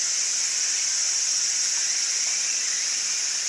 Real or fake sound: real